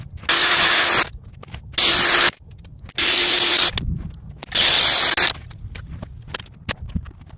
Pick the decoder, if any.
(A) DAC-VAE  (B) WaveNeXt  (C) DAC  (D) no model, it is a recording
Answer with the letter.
D